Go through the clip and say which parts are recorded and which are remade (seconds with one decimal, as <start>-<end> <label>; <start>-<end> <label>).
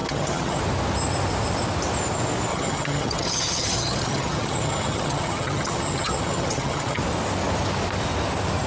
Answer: 0.0-0.6 remade; 0.6-2.5 recorded; 2.5-7.0 remade; 7.0-8.7 recorded